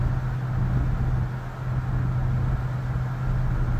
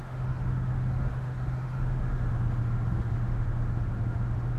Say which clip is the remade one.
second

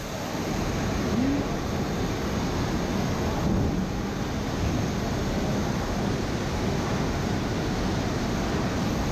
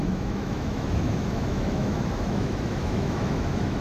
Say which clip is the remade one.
second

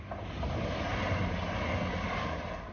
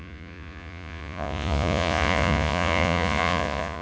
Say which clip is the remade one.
second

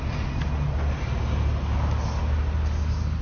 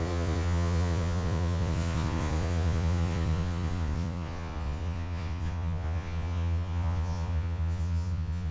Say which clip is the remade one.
second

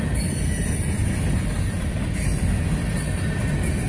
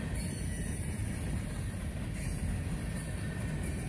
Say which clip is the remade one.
second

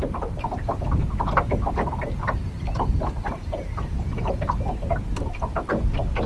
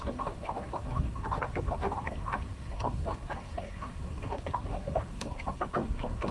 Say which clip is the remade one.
second